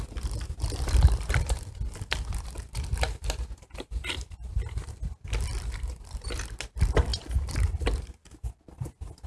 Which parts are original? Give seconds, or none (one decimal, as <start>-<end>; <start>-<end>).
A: 0.0-9.3